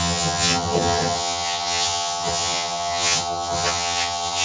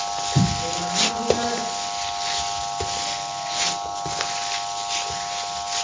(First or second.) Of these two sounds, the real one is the second